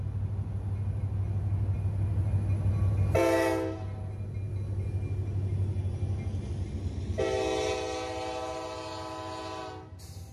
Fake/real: real